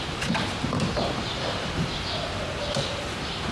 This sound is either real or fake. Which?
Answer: fake